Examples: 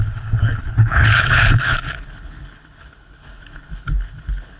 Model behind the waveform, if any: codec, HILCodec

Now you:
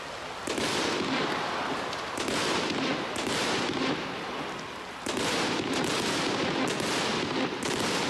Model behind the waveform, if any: none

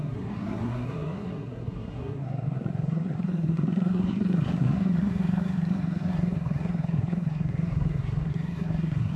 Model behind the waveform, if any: codec, SNAC